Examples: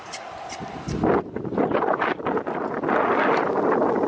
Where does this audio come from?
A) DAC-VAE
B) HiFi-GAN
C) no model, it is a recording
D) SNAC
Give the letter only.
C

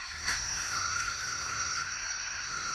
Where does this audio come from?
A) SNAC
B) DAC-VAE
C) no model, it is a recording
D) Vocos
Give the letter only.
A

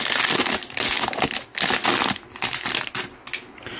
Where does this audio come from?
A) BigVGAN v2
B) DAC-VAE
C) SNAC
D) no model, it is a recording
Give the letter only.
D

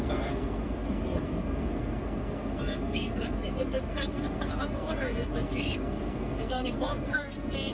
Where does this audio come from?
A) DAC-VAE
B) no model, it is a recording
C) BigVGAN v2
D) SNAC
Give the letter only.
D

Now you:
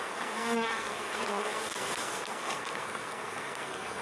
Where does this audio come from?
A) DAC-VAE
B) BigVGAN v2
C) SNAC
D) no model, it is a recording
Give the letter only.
C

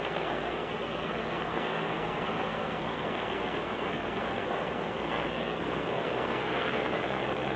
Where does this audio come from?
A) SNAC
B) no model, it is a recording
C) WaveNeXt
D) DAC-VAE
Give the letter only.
A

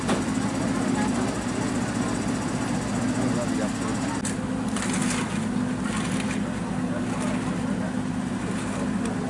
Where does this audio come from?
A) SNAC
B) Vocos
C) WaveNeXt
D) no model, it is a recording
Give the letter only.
D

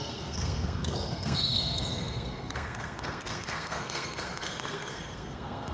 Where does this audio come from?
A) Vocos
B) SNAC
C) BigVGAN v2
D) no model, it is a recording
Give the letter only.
B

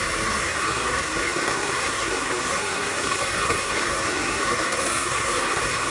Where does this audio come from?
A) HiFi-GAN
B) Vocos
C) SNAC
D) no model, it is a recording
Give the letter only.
C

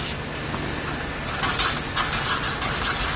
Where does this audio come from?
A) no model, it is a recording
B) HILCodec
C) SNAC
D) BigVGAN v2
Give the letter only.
A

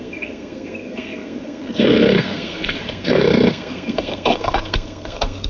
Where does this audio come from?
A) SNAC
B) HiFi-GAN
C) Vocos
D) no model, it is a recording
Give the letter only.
A